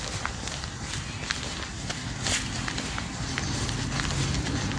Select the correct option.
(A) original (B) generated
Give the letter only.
A